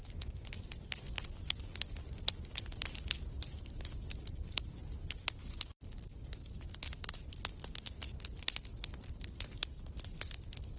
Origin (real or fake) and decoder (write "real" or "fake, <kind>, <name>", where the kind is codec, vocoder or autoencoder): real